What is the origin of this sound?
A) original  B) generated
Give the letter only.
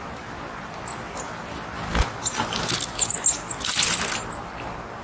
A